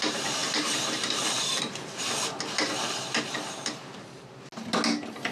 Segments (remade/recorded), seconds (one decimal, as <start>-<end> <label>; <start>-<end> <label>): 0.0-1.7 remade; 1.7-5.3 recorded